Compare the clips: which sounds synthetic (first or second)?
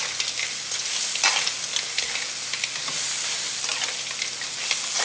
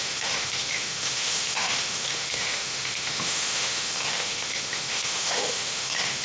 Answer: second